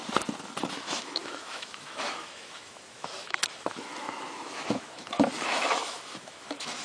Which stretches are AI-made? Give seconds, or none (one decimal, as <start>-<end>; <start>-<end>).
0.7-6.8